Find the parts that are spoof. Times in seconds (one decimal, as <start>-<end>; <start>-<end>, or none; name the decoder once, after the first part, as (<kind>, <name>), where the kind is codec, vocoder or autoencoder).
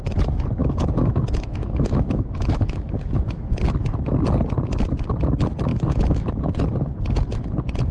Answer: 0.6-3.5 (autoencoder, DAC-VAE); 5.7-6.5